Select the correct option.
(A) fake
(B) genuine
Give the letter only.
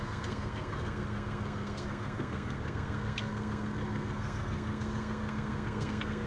A